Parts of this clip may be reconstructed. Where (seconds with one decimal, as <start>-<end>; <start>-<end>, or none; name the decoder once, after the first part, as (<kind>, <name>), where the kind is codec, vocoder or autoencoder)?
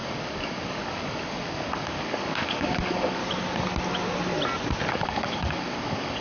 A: 0.0-3.2 (codec, DAC); 4.9-6.2